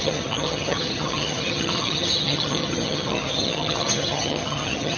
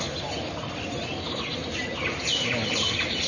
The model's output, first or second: first